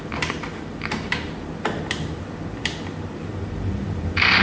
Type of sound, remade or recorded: remade